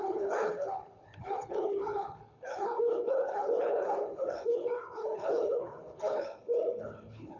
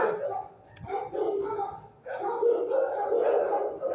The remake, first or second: first